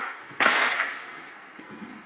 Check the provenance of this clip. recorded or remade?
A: remade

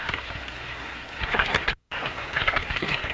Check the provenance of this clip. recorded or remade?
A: remade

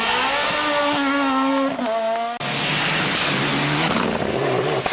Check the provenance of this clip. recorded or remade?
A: recorded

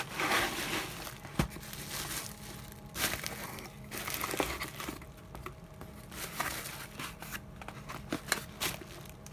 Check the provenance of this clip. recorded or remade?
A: recorded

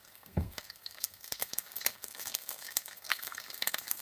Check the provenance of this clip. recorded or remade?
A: remade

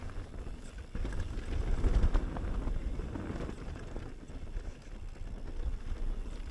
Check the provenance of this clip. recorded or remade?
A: recorded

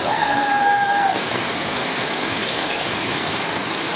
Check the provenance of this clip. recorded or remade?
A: remade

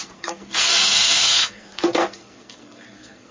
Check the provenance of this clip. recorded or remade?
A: remade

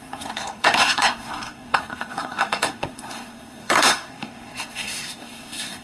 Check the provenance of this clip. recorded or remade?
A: remade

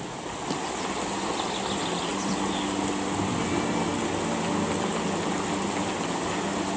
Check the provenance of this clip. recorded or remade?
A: recorded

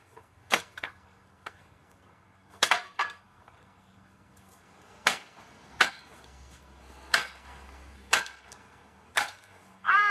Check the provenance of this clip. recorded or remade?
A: remade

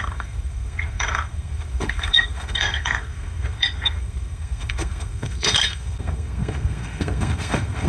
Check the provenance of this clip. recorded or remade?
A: remade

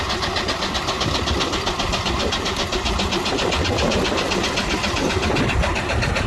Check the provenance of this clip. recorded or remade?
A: recorded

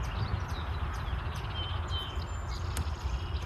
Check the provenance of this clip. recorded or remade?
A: recorded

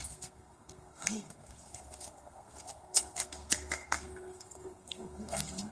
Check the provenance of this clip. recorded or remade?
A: remade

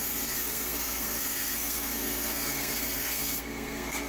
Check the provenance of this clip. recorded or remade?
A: remade